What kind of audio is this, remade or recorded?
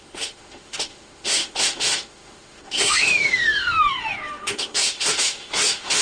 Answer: remade